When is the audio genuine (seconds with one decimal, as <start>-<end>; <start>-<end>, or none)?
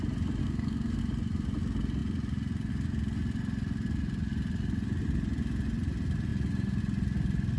0.0-0.4; 1.0-7.6